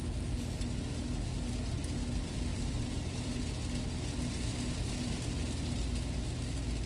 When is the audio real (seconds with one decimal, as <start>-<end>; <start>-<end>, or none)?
0.0-2.5; 3.4-4.5; 5.1-6.9